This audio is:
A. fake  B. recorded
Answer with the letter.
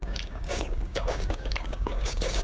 A